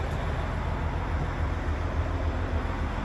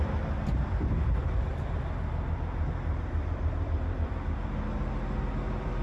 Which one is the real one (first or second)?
first